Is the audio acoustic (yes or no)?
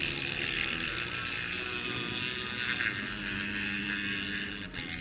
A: yes